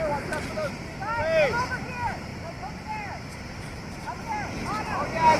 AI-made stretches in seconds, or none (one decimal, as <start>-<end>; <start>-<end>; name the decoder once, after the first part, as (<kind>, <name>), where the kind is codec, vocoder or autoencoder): 2.3-4.2 (vocoder, BigVGAN v2)